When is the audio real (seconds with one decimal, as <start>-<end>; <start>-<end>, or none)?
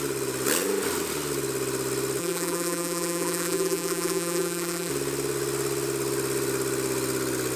0.0-2.2; 4.9-7.6